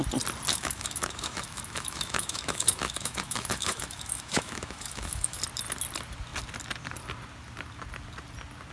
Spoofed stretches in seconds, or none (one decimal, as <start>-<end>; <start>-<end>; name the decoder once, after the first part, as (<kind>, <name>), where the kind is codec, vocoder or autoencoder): 0.5-5.4 (autoencoder, DAC-VAE)